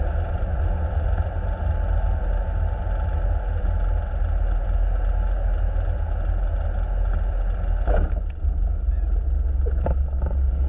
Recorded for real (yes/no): yes